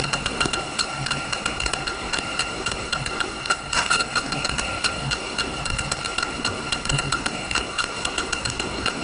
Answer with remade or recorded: remade